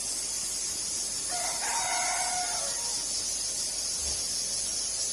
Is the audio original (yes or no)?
yes